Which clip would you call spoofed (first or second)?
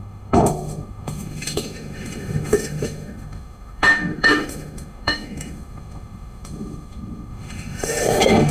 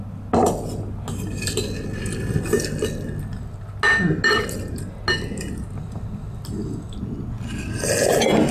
first